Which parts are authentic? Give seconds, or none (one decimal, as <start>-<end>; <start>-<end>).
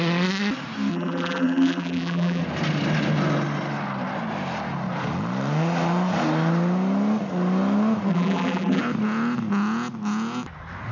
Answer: 0.0-0.9; 2.4-8.1; 8.8-10.9